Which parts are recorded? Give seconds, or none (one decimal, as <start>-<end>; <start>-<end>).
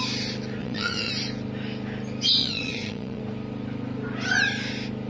0.0-0.6; 1.1-2.4; 3.2-5.1